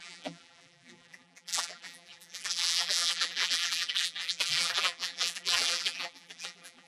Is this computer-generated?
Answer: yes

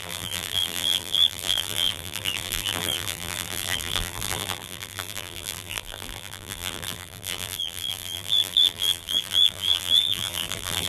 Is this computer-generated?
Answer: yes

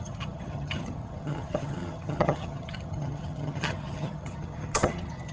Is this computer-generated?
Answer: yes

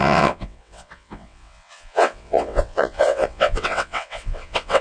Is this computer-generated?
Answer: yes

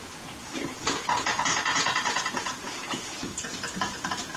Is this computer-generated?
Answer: yes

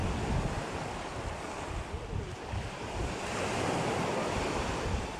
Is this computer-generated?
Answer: no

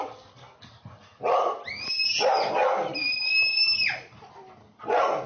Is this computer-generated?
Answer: no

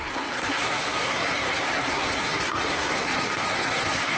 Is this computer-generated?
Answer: yes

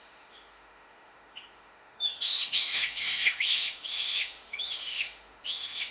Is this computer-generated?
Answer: yes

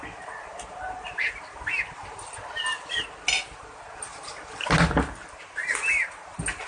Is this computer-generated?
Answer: no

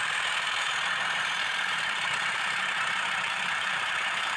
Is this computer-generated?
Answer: yes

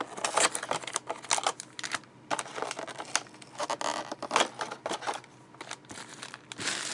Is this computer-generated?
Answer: no